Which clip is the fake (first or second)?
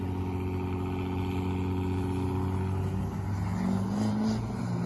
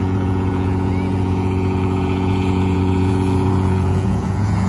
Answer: second